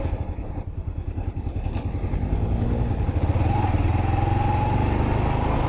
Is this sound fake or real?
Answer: real